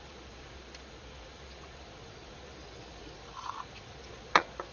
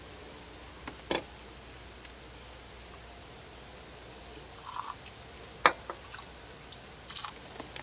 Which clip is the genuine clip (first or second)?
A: second